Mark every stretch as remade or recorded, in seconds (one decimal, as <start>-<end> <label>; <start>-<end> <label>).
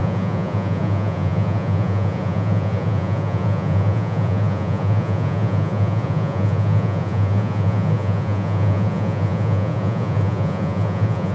0.0-11.3 remade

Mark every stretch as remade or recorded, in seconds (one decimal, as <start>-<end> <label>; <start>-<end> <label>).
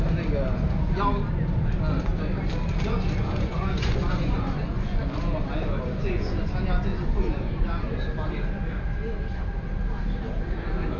0.0-3.2 recorded; 3.2-5.0 remade; 5.0-6.0 recorded; 6.0-6.5 remade; 6.5-6.9 recorded; 6.9-7.9 remade; 7.9-11.0 recorded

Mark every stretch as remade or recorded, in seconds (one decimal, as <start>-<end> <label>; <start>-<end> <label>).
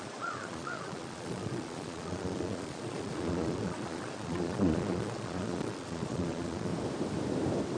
0.0-6.7 remade; 6.7-7.8 recorded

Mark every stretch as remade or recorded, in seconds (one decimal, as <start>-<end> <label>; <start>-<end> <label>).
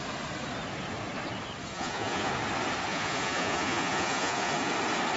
0.0-1.7 recorded; 1.7-2.3 remade; 2.3-2.9 recorded; 2.9-4.7 remade; 4.7-5.2 recorded